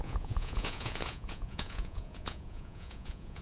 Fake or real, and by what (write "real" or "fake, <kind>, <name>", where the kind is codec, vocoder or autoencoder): fake, vocoder, Vocos